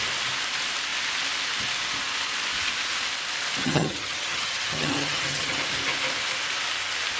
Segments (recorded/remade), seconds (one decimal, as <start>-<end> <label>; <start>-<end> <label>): 0.0-3.6 recorded; 3.6-5.6 remade; 5.6-7.2 recorded

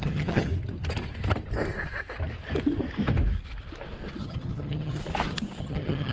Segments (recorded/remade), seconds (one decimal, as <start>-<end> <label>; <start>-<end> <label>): 0.0-0.5 remade; 0.5-4.2 recorded; 4.2-5.0 remade; 5.0-5.6 recorded; 5.6-6.1 remade

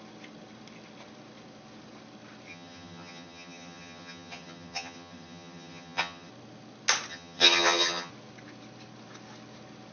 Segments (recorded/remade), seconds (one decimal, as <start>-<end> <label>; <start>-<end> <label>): 0.0-2.5 recorded; 2.5-6.3 remade; 6.3-7.1 recorded; 7.1-8.1 remade; 8.1-9.9 recorded

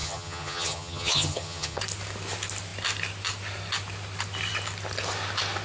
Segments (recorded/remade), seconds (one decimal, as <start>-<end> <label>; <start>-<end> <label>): 0.0-1.8 remade; 1.8-5.6 recorded

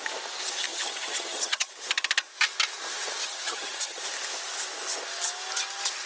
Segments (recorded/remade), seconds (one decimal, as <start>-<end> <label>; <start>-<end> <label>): 0.0-0.7 recorded; 0.7-1.7 remade; 1.7-3.2 recorded; 3.2-4.0 remade; 4.0-6.1 recorded

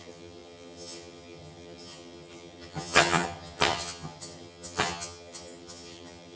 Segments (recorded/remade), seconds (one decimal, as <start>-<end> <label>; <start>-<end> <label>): 0.0-6.4 remade